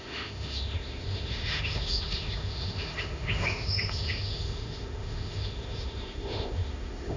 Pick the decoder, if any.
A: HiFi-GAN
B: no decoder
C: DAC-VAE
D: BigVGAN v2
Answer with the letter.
C